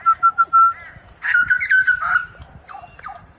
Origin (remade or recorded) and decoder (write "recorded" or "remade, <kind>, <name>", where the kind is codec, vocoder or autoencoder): recorded